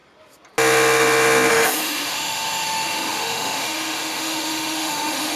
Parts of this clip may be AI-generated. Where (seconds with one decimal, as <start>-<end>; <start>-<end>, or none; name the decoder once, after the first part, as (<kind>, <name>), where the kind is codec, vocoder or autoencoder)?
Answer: 1.5-5.3 (autoencoder, DAC-VAE)